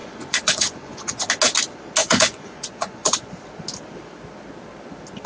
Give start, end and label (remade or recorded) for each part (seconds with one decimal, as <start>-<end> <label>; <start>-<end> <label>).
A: 0.0-1.3 remade; 1.3-2.0 recorded; 2.0-3.3 remade; 3.3-5.3 recorded